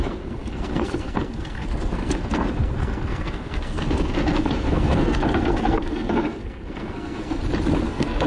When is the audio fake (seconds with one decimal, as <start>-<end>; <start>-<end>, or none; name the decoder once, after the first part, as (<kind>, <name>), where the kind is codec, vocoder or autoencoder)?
0.0-7.4 (codec, SNAC); 7.9-8.3